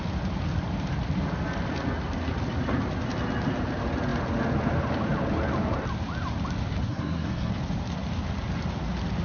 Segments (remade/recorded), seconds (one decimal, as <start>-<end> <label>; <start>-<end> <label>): 0.0-6.8 recorded; 6.8-7.5 remade; 7.5-9.2 recorded